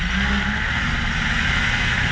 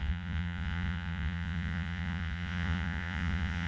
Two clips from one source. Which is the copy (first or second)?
second